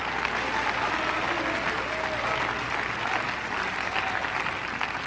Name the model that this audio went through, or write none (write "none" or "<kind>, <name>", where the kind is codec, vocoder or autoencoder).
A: none